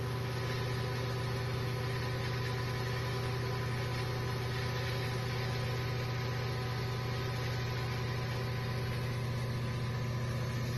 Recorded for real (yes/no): yes